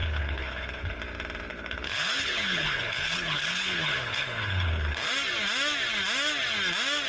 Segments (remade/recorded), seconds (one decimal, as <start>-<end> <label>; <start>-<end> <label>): 0.0-1.0 remade; 1.0-1.5 recorded; 1.5-5.1 remade; 5.1-7.1 recorded